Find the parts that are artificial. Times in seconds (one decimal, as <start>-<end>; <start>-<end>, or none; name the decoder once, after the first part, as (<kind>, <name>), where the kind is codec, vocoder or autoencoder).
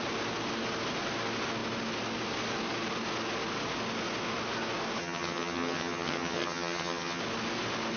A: 5.0-7.2 (vocoder, HiFi-GAN)